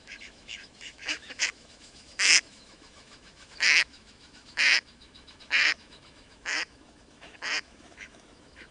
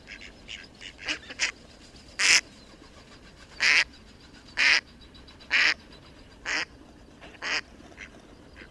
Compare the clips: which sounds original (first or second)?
second